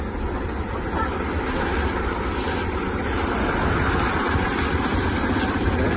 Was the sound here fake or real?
real